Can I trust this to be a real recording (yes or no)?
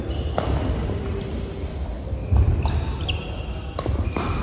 yes